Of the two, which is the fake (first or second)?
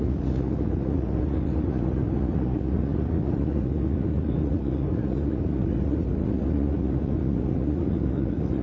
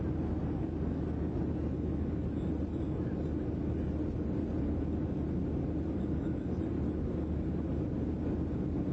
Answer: first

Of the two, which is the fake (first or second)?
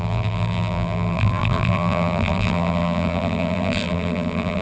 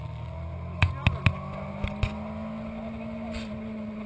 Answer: first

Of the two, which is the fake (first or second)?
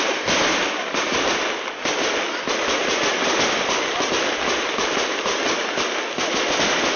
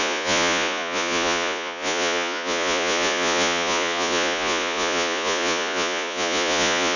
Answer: second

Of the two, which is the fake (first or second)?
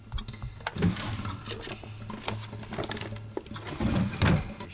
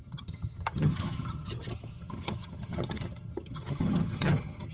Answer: second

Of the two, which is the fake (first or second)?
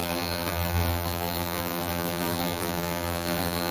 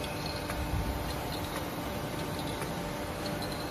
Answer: first